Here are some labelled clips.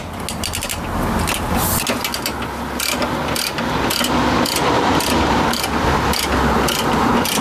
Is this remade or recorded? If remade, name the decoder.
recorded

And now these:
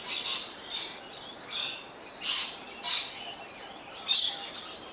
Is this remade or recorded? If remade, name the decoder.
recorded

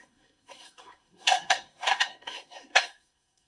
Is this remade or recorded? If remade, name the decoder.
remade, codec, SNAC